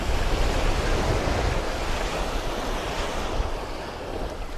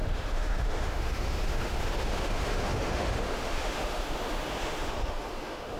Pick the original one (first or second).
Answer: first